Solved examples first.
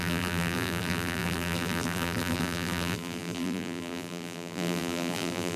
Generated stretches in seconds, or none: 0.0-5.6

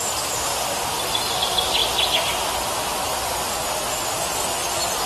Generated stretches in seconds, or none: none

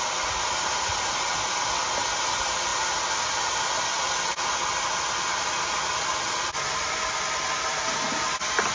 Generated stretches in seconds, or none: none